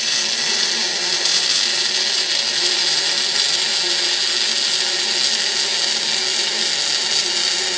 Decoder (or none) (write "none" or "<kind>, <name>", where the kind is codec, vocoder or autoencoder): none